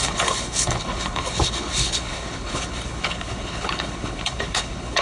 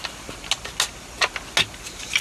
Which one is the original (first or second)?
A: second